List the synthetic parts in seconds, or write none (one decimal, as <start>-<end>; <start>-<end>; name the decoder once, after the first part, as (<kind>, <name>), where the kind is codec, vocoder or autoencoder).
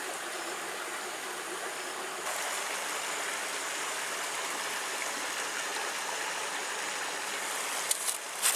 none